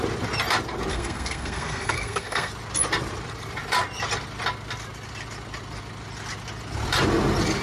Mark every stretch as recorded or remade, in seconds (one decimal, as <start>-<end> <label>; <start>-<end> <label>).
0.0-0.9 recorded; 0.9-2.5 remade; 2.5-7.6 recorded